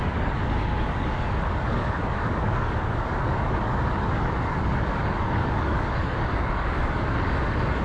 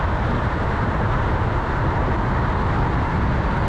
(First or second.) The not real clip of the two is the first